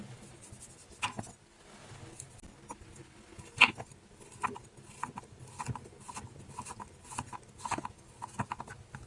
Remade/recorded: recorded